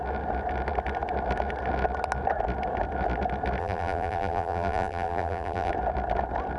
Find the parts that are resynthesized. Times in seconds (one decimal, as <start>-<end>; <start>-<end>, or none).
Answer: 3.6-5.7